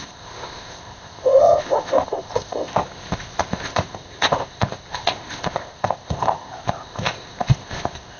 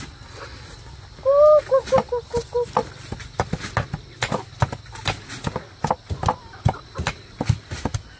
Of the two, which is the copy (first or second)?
first